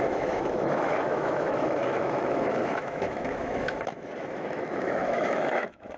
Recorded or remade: remade